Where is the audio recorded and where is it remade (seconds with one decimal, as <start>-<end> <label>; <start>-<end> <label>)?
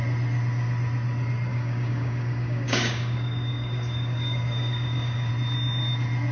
0.0-1.5 recorded; 1.5-5.3 remade; 5.3-6.3 recorded